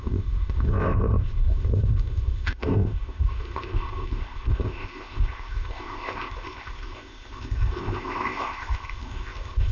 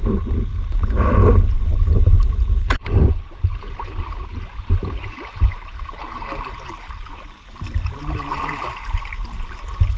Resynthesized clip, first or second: first